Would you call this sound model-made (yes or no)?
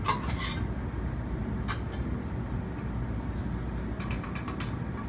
no